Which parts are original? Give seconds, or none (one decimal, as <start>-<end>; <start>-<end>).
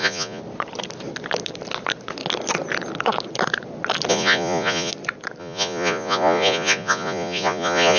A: 0.4-4.1; 4.9-5.4